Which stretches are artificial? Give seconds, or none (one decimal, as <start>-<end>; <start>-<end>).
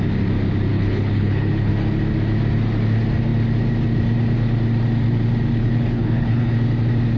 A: 0.7-1.7; 5.6-6.5